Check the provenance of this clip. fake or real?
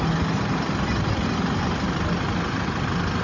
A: real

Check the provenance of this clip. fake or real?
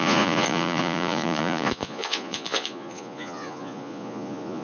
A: fake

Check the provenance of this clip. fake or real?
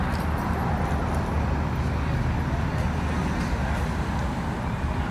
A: real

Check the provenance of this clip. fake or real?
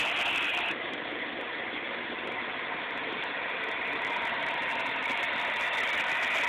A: real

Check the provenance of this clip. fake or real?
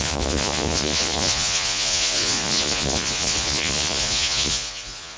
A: fake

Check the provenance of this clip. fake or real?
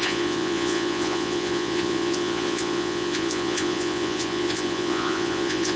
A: fake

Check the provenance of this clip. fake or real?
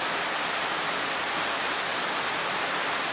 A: real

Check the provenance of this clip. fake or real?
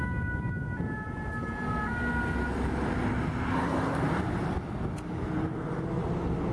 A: real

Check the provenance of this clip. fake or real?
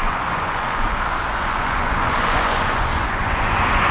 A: fake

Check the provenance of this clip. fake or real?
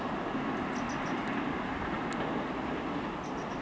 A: real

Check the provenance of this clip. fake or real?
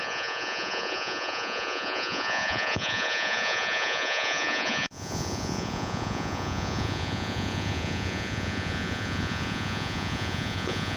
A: fake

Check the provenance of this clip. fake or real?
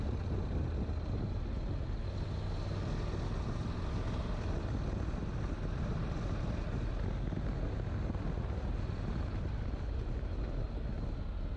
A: real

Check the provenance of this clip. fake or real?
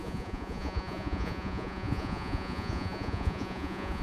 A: fake